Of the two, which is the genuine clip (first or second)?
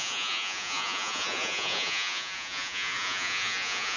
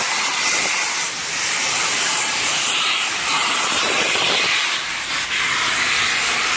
second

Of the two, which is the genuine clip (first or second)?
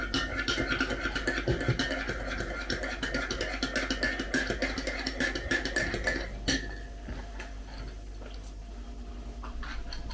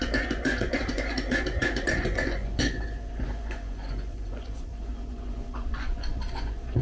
first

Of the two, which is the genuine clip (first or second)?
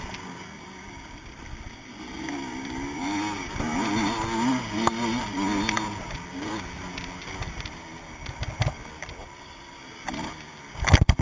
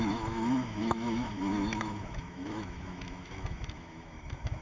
first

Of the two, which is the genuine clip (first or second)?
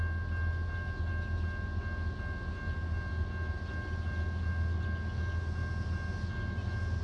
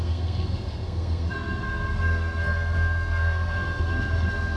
first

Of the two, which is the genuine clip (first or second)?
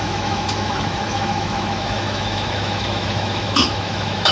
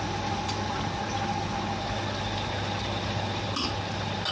second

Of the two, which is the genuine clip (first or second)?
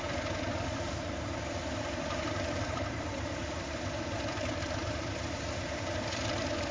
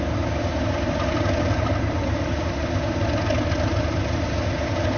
second